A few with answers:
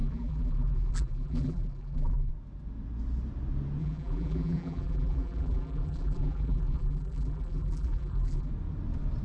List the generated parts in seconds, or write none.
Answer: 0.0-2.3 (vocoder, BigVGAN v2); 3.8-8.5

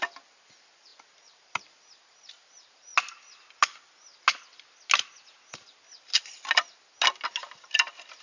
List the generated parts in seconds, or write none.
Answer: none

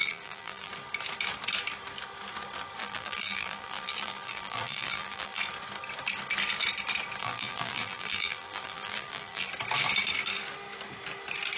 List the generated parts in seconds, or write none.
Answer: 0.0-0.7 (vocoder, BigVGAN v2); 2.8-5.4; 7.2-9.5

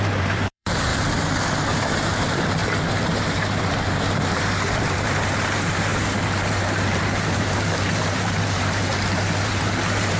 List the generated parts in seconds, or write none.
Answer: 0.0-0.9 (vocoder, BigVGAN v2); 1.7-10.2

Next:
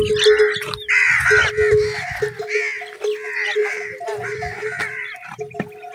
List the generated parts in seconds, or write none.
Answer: 3.6-5.4 (vocoder, BigVGAN v2)